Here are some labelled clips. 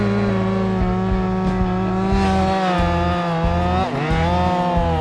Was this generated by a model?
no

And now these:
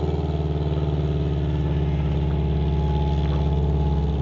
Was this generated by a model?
no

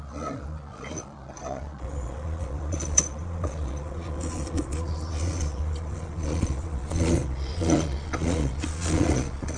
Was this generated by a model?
yes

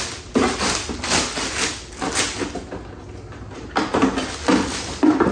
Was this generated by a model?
no